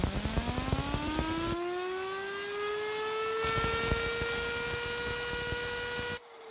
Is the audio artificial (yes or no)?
no